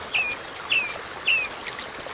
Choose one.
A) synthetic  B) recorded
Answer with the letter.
B